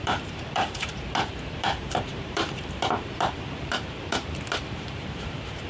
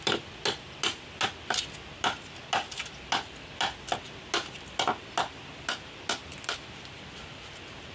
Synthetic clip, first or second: first